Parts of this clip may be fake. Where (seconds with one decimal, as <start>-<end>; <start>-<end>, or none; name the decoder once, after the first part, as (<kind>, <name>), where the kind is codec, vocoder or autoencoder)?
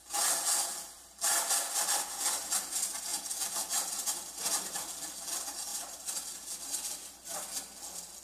3.1-4.4 (vocoder, BigVGAN v2); 5.7-7.1